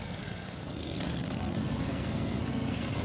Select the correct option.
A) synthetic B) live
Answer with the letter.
A